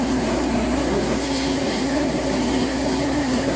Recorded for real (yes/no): no